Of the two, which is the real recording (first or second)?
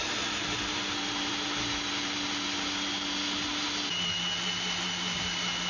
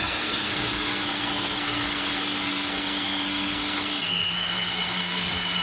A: first